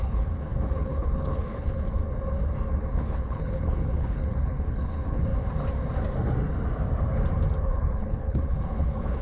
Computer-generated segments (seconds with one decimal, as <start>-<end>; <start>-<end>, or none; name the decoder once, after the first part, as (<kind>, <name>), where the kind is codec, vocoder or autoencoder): 0.0-2.0 (codec, HILCodec); 2.9-5.3; 7.6-9.2